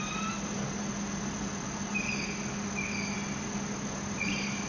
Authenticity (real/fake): real